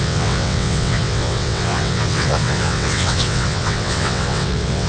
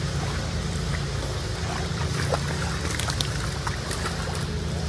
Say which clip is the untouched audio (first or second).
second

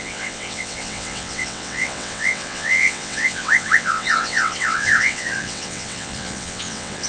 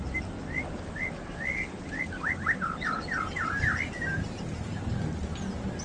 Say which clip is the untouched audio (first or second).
second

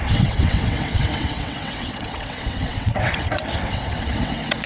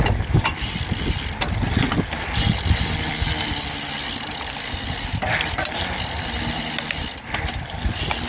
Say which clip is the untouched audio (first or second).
second